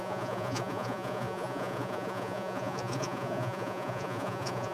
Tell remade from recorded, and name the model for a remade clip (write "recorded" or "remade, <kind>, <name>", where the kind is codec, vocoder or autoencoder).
remade, vocoder, Vocos